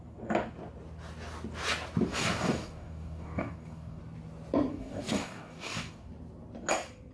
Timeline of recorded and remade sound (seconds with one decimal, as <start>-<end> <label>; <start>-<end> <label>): 0.0-2.1 recorded; 2.1-4.0 remade; 4.0-4.7 recorded; 4.7-6.1 remade; 6.1-7.1 recorded

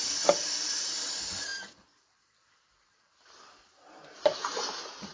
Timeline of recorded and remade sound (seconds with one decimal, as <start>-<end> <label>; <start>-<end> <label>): 0.0-5.1 recorded

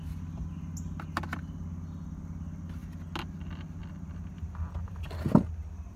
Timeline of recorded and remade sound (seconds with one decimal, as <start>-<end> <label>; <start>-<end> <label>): 0.0-6.0 recorded

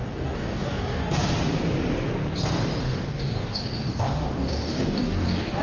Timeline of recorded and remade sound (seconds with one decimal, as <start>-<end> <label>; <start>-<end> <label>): 0.0-1.1 remade; 1.1-2.8 recorded; 2.8-5.6 remade

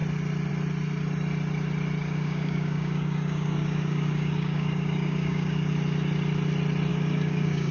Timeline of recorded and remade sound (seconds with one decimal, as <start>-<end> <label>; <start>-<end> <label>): 0.0-2.0 recorded; 2.0-5.7 remade; 5.7-6.9 recorded; 6.9-7.7 remade

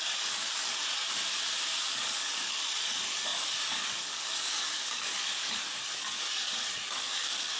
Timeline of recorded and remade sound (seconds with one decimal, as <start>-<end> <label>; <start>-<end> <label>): 0.0-1.2 remade; 1.2-1.8 recorded; 1.8-7.6 remade

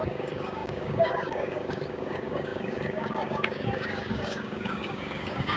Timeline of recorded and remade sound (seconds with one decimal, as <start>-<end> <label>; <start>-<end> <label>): 0.0-5.6 remade

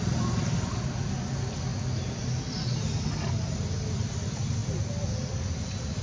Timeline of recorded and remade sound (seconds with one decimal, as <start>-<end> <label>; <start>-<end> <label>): 0.0-6.0 recorded